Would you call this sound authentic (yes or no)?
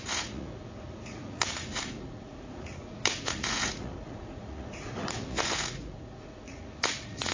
no